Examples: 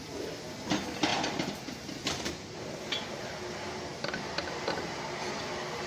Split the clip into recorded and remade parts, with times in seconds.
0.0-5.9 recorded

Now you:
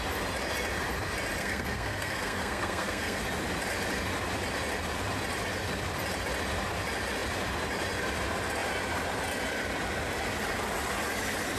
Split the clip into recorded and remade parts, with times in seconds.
0.0-1.4 recorded; 1.4-3.2 remade; 3.2-11.6 recorded

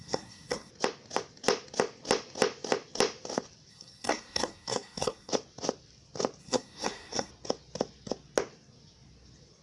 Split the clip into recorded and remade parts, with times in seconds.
0.0-0.7 remade; 0.7-3.7 recorded; 3.7-5.3 remade; 5.3-6.4 recorded; 6.4-7.3 remade; 7.3-9.6 recorded

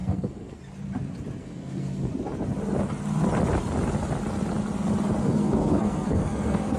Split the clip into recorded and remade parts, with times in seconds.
0.0-0.6 remade; 0.6-1.4 recorded; 1.4-2.1 remade; 2.1-5.2 recorded; 5.2-6.8 remade

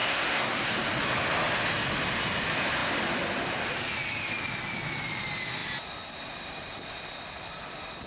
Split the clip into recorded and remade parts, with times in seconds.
0.0-0.7 remade; 0.7-8.1 recorded

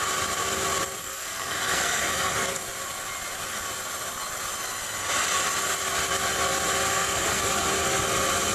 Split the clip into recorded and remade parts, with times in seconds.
0.0-1.0 recorded; 1.0-2.6 remade; 2.6-6.9 recorded; 6.9-7.5 remade; 7.5-8.5 recorded